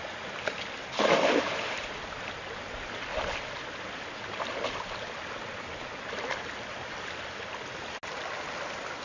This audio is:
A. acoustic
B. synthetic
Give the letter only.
A